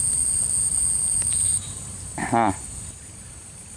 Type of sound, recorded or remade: remade